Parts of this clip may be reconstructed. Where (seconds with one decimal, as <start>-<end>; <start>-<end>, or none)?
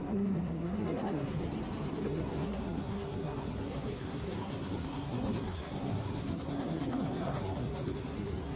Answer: 0.0-1.4; 2.0-8.6